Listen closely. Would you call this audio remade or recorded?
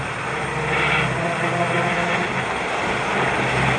recorded